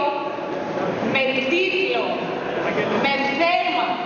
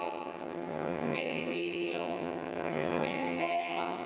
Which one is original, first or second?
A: first